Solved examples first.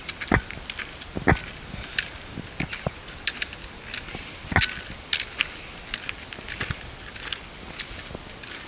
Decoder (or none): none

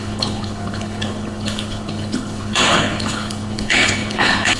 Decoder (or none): codec, HILCodec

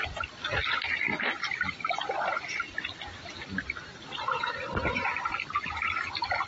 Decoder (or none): none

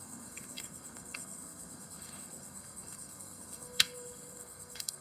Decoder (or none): codec, SNAC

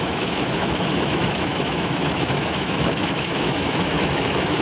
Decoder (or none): autoencoder, DAC-VAE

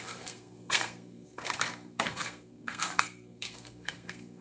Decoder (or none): codec, SNAC